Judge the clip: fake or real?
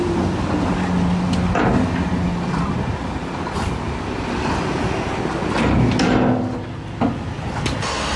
real